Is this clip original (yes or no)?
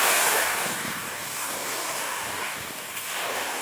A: no